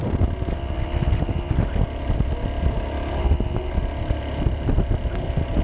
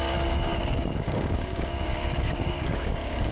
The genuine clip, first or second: first